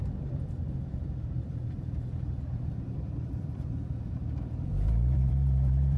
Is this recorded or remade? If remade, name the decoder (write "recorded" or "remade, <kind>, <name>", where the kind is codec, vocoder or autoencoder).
remade, vocoder, BigVGAN v2